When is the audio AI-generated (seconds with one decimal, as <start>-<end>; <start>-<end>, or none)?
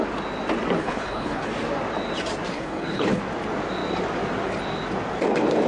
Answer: 0.8-1.5; 2.5-3.2